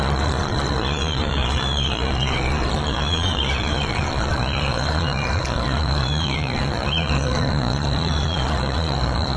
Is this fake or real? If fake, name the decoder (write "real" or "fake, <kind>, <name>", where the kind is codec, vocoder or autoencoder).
fake, vocoder, Vocos